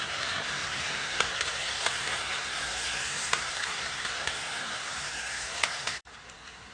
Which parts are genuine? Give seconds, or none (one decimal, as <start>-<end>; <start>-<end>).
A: none